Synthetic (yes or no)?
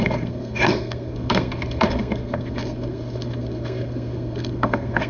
yes